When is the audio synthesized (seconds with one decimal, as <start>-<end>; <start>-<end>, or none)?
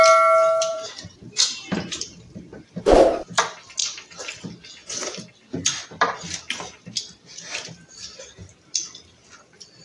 0.7-2.4; 3.8-4.4